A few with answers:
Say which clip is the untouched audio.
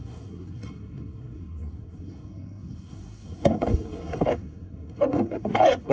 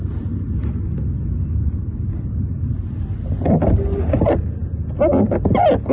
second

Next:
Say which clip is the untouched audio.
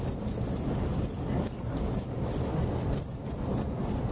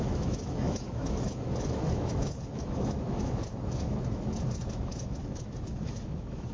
first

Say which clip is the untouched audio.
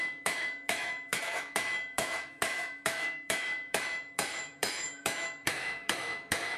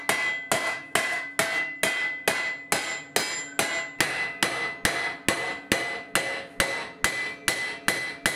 second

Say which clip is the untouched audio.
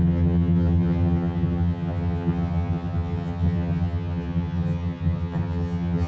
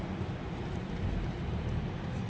second